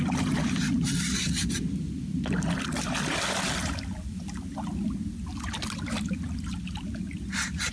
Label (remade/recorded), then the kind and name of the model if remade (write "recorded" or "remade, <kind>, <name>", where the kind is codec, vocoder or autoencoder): recorded